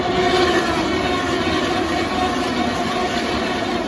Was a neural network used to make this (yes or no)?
no